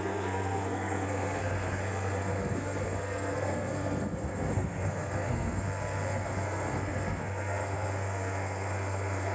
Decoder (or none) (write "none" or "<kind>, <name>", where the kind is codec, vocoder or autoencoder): codec, SNAC